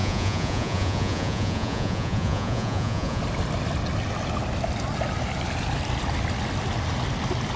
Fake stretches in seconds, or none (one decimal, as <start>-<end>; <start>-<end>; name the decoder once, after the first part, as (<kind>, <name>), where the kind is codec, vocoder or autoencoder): 0.0-3.2 (vocoder, Vocos)